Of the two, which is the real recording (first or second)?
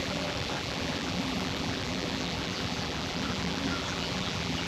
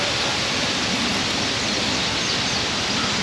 second